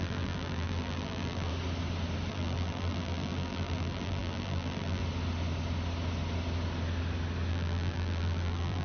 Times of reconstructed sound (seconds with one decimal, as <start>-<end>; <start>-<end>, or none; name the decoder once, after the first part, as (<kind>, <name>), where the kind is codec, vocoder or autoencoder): 0.0-1.5 (vocoder, BigVGAN v2); 2.3-5.0; 7.5-8.8